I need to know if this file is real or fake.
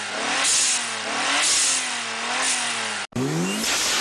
real